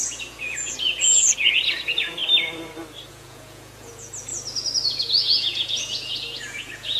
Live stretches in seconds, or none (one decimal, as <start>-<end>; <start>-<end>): 2.2-3.1; 4.3-5.0